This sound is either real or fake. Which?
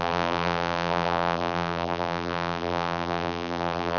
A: fake